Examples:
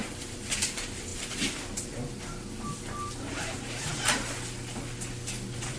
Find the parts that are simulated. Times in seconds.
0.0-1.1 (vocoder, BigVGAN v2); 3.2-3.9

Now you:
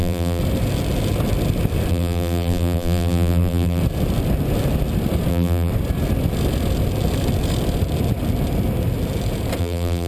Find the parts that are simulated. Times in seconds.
0.0-0.4 (vocoder, BigVGAN v2); 1.9-3.8; 5.3-5.7; 9.6-10.1